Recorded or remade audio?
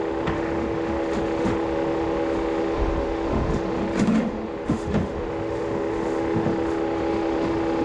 remade